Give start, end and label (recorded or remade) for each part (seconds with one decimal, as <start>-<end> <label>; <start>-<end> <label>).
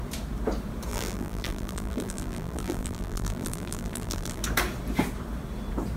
0.0-0.9 recorded; 0.9-4.4 remade; 4.4-6.0 recorded